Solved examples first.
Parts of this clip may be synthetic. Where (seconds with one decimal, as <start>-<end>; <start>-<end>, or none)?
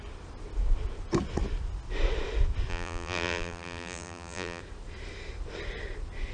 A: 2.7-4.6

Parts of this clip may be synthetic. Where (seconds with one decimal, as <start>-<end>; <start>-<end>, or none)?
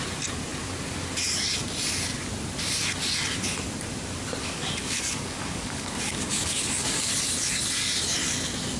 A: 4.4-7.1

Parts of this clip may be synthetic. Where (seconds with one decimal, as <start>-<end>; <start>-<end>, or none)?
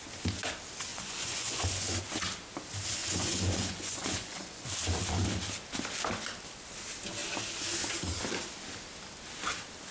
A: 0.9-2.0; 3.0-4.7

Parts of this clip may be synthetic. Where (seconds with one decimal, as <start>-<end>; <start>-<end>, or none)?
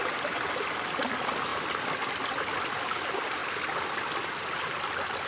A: none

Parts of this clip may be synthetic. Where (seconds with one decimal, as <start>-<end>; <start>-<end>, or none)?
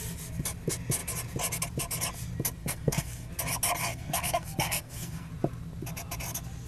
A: 2.6-3.3; 3.8-5.3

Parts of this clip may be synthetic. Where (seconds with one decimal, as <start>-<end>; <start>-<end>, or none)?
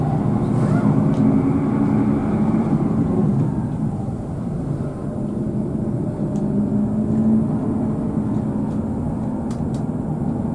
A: 2.2-4.4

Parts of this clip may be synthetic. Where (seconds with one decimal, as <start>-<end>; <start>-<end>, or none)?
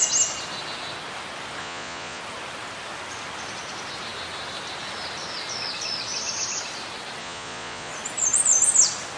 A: 1.6-2.2; 7.2-7.9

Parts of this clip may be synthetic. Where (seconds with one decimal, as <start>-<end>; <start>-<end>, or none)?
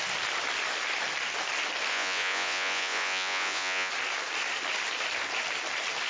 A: 1.9-3.9